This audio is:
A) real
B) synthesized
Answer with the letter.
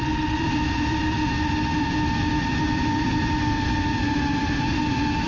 B